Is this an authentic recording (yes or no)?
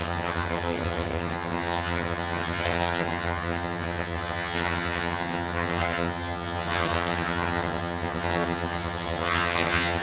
no